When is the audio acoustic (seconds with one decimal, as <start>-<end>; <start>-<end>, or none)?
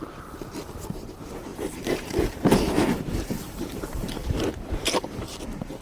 0.0-1.5; 5.0-5.8